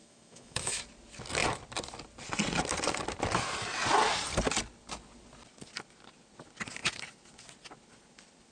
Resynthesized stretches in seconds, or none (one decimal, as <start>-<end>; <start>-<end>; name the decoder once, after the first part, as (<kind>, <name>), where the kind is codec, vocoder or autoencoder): 0.0-0.8 (autoencoder, DAC-VAE)